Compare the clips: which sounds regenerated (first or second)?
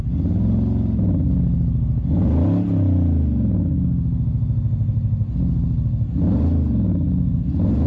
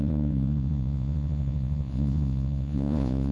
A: second